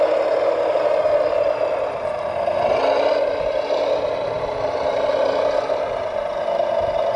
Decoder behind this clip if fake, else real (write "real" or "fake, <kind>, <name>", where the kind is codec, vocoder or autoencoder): real